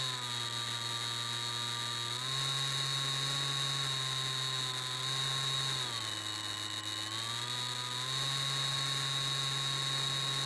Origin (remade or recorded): recorded